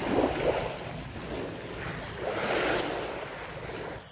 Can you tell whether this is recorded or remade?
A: recorded